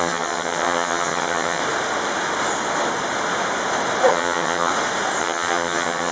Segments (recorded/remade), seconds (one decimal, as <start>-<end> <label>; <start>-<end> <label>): 0.0-1.6 remade; 1.6-4.1 recorded; 4.1-4.7 remade; 4.7-5.2 recorded; 5.2-6.1 remade